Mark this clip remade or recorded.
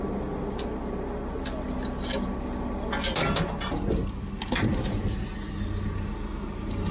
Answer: recorded